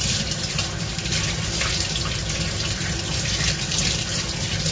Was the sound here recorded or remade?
recorded